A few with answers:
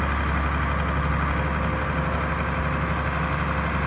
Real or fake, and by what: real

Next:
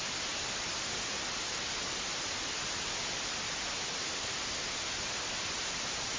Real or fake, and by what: real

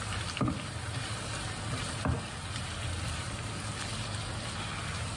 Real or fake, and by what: real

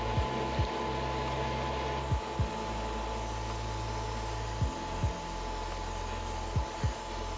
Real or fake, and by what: real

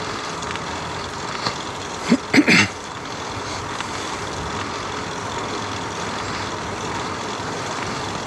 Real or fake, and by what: real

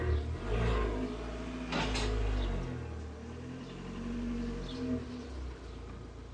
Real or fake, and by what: real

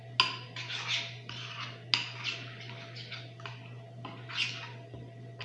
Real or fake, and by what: real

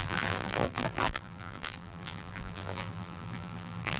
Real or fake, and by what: fake, vocoder, BigVGAN v2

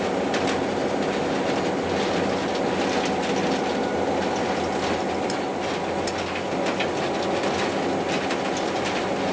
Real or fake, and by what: real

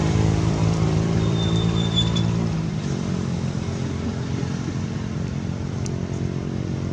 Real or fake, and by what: fake, vocoder, BigVGAN v2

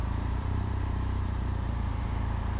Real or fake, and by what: fake, vocoder, BigVGAN v2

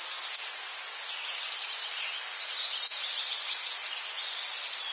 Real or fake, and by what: real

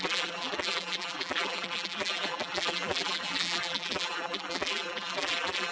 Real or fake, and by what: fake, vocoder, BigVGAN v2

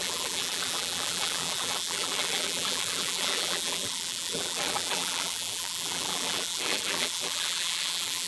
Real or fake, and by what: fake, vocoder, BigVGAN v2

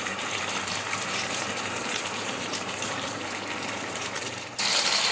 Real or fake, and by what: fake, vocoder, BigVGAN v2